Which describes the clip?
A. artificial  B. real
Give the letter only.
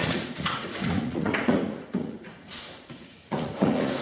A